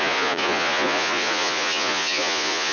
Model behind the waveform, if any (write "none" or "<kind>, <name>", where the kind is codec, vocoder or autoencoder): vocoder, Vocos